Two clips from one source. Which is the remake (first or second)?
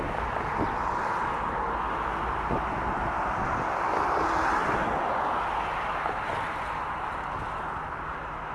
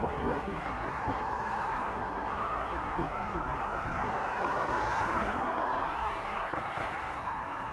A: second